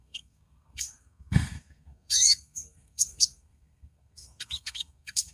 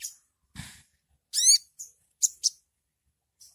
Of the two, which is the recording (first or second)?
second